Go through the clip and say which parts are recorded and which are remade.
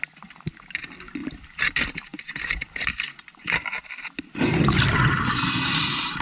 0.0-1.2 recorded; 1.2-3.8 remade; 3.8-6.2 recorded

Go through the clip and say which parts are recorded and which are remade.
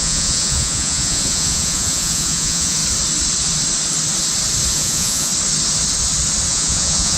0.0-2.8 remade; 2.8-4.7 recorded; 4.7-5.3 remade; 5.3-6.5 recorded; 6.5-7.2 remade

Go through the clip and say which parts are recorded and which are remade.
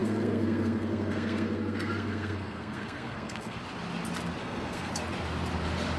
0.0-3.6 remade; 3.6-4.4 recorded; 4.4-4.9 remade; 4.9-6.0 recorded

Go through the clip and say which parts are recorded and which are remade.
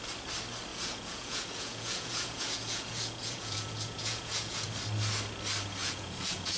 0.0-0.7 recorded; 0.7-4.7 remade; 4.7-5.8 recorded; 5.8-6.6 remade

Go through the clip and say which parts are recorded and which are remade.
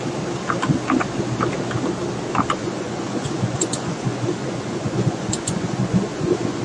0.0-2.6 recorded; 2.6-6.6 remade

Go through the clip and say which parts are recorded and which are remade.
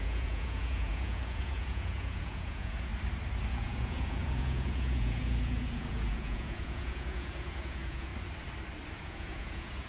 0.0-2.9 remade; 2.9-3.5 recorded; 3.5-8.1 remade; 8.1-9.0 recorded; 9.0-9.9 remade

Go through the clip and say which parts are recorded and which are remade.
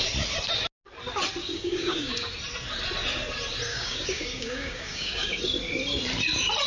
0.0-1.4 recorded; 1.4-2.3 remade; 2.3-3.7 recorded; 3.7-5.4 remade; 5.4-6.7 recorded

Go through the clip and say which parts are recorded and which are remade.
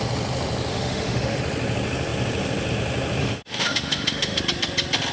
0.0-0.7 recorded; 0.7-1.4 remade; 1.4-3.2 recorded; 3.2-4.4 remade; 4.4-5.1 recorded